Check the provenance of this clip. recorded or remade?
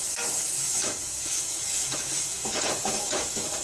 remade